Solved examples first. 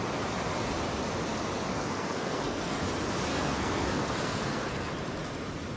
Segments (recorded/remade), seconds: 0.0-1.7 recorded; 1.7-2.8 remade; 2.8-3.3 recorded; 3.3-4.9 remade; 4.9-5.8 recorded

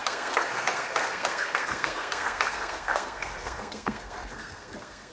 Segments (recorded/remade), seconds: 0.0-5.1 remade

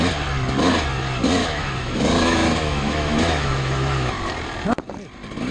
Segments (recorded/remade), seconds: 0.0-1.4 recorded; 1.4-4.1 remade; 4.1-5.5 recorded

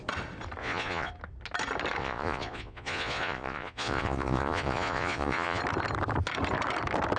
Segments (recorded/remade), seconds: 0.0-0.6 recorded; 0.6-1.1 remade; 1.1-2.0 recorded; 2.0-5.6 remade; 5.6-7.2 recorded

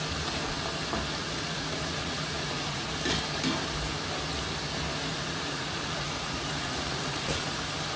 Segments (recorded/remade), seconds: 0.0-1.2 recorded; 1.2-2.9 remade; 2.9-5.1 recorded; 5.1-7.6 remade; 7.6-8.0 recorded

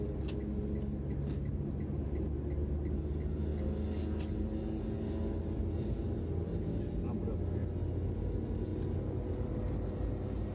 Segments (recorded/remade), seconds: 0.0-10.5 recorded

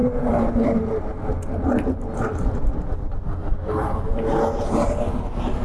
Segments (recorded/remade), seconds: 0.0-0.9 remade; 0.9-3.4 recorded; 3.4-4.9 remade; 4.9-5.6 recorded